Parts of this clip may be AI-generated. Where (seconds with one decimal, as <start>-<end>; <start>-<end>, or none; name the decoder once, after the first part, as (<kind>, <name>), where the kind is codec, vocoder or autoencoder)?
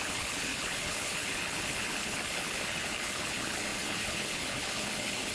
0.0-5.3 (codec, HILCodec)